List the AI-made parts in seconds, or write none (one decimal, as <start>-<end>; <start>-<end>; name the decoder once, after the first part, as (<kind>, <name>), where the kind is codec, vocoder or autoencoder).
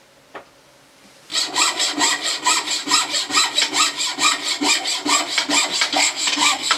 5.9-6.8 (codec, SNAC)